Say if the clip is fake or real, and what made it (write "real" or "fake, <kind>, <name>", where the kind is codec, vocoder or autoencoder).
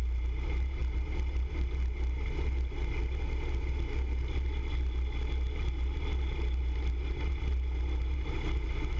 real